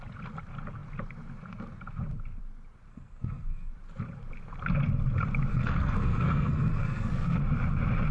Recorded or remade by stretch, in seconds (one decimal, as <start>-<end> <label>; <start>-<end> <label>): 0.0-2.9 recorded; 2.9-3.7 remade; 3.7-5.5 recorded; 5.5-7.4 remade; 7.4-8.1 recorded